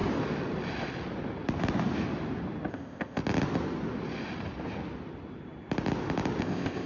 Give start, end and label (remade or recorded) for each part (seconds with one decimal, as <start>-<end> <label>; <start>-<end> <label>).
0.0-2.7 recorded; 2.7-3.2 remade; 3.2-6.4 recorded; 6.4-6.9 remade